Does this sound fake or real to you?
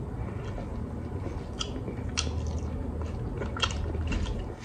real